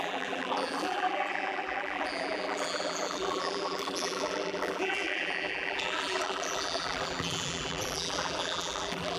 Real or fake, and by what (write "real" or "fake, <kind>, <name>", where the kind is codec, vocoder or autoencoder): fake, vocoder, BigVGAN v2